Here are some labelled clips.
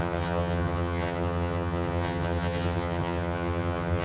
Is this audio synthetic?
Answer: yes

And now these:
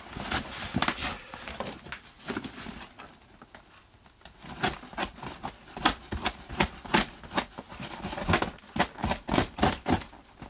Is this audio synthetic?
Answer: no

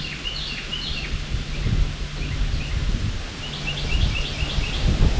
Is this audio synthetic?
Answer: no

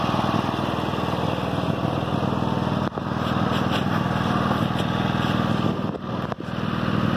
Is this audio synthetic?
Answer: no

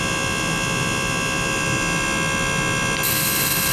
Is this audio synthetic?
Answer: no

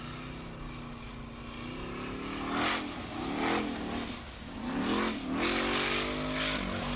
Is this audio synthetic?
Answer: no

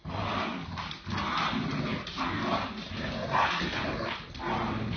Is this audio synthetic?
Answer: no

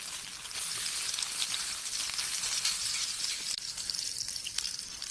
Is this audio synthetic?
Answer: no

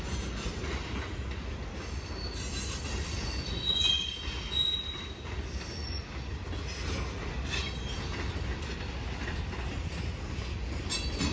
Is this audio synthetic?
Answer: no